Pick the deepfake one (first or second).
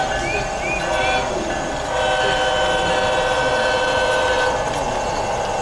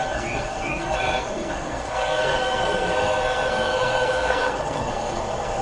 second